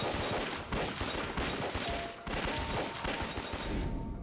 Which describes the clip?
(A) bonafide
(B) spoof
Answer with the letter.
A